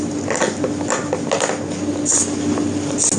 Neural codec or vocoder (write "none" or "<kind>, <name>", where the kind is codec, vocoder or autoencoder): none